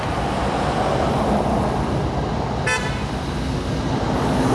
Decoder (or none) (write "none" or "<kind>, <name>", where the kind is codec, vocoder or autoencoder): none